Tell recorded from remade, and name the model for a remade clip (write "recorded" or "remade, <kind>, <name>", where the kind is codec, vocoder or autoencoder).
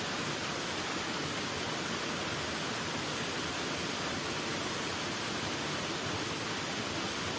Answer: recorded